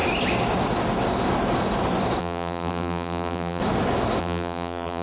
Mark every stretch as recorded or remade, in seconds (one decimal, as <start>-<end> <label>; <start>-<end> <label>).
0.0-2.2 recorded; 2.2-3.6 remade; 3.6-4.2 recorded; 4.2-5.0 remade